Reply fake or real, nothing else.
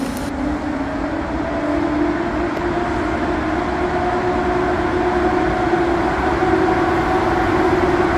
real